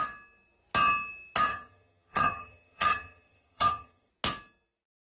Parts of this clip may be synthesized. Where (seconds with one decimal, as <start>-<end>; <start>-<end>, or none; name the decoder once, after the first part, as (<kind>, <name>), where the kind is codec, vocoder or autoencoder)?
1.5-4.1 (vocoder, HiFi-GAN)